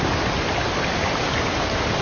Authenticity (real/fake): real